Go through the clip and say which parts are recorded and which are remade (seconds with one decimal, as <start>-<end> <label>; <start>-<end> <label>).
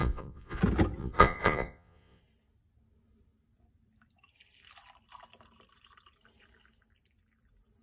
0.0-0.6 remade; 0.6-1.0 recorded; 1.0-2.2 remade; 2.2-7.8 recorded